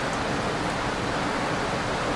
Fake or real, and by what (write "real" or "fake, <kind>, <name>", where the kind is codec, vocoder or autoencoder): real